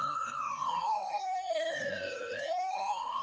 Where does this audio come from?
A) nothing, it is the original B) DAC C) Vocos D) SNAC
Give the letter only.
D